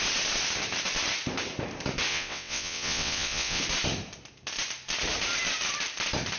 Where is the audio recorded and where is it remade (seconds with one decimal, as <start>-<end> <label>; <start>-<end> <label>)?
0.0-2.1 recorded; 2.1-3.6 remade; 3.6-6.4 recorded